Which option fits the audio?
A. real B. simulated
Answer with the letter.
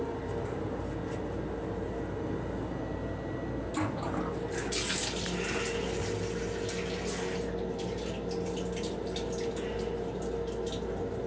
A